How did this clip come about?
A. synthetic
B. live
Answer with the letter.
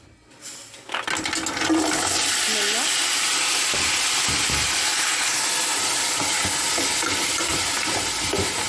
B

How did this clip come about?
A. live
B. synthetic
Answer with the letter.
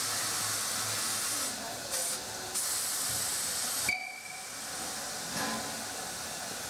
A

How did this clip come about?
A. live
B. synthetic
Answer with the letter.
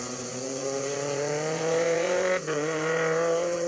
B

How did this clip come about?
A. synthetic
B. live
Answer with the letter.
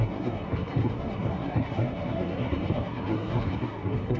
A